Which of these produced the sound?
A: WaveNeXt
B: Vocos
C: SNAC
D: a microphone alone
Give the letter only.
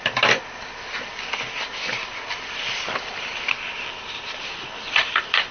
D